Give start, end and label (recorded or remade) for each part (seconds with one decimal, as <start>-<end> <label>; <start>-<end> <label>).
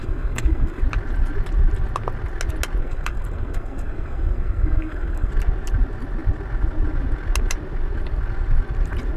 0.0-0.8 remade; 0.8-2.8 recorded; 2.8-5.3 remade; 5.3-9.2 recorded